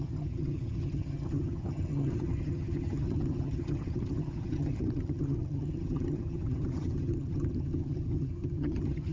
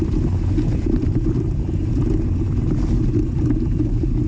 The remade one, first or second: first